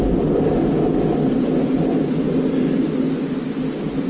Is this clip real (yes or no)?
yes